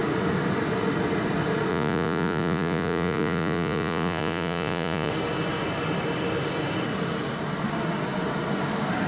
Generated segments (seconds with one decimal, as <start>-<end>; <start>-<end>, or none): 1.7-5.1